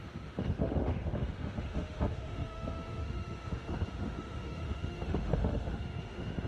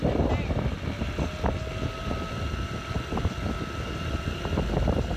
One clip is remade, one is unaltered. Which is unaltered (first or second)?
second